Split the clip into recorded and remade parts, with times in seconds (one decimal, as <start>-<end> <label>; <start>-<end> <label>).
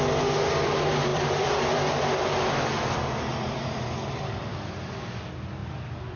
0.0-1.1 recorded; 1.1-4.8 remade; 4.8-5.6 recorded; 5.6-6.2 remade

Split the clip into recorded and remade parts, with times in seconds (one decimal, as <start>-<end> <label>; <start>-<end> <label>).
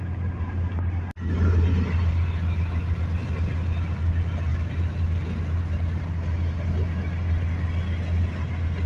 0.0-8.9 recorded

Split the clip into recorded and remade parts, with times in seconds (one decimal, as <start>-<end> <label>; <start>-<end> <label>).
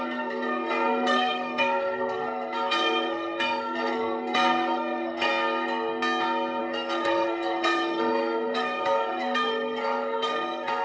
0.0-5.3 remade; 5.3-6.6 recorded; 6.6-10.8 remade